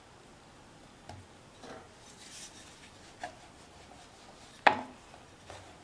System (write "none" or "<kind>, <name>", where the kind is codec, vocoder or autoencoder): none